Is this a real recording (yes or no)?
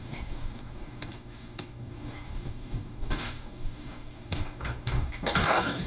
no